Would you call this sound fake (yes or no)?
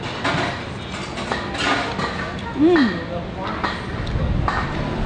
no